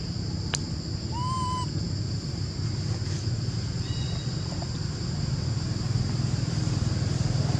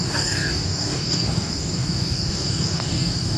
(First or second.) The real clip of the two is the first